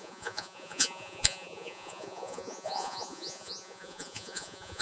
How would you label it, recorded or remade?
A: remade